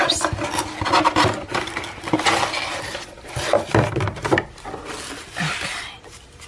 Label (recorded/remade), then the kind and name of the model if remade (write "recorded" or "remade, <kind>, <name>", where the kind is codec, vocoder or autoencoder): recorded